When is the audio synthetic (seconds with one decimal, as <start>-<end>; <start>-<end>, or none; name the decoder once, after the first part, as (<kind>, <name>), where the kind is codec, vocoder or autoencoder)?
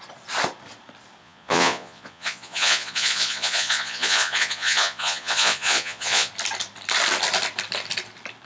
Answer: 1.2-6.3 (vocoder, Vocos)